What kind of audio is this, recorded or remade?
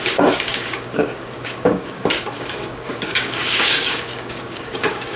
remade